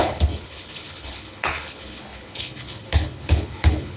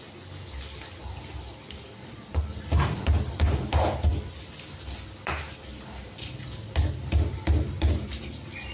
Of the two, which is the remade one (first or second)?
first